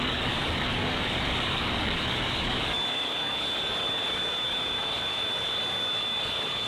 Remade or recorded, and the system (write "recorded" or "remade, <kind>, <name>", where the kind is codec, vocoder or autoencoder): remade, codec, DAC